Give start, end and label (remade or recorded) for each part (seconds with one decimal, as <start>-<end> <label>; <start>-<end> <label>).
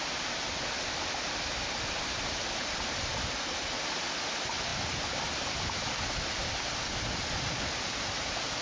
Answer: 0.0-8.6 recorded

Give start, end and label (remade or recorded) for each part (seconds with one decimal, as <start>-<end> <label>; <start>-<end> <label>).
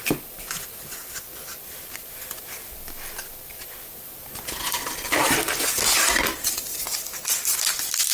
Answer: 0.0-8.1 recorded